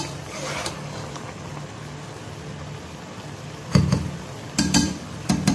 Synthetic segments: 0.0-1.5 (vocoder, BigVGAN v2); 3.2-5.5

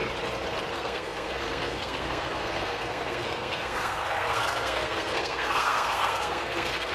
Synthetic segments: 0.7-6.9 (codec, SNAC)

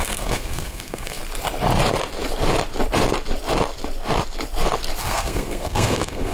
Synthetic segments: 0.0-1.2 (codec, SNAC); 5.0-6.3

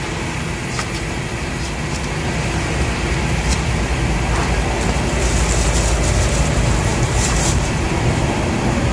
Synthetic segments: 6.9-7.9 (vocoder, BigVGAN v2)

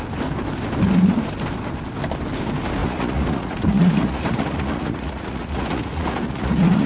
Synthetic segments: 2.8-6.9 (vocoder, Vocos)